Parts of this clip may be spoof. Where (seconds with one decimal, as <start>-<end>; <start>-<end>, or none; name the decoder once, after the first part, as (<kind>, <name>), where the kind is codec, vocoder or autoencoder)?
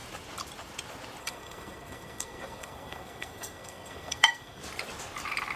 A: 1.2-4.6 (codec, SNAC)